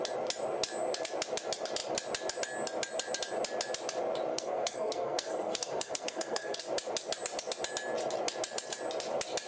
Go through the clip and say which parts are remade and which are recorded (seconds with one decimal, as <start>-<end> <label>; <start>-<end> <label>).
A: 0.0-4.3 recorded; 4.3-6.6 remade; 6.6-9.5 recorded